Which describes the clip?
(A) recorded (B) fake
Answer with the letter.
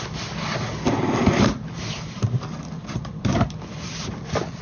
B